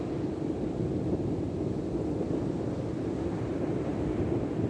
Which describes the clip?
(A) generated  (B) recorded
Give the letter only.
A